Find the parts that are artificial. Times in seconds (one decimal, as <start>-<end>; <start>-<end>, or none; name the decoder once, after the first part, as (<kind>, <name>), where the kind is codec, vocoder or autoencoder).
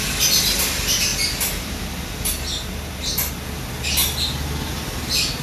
none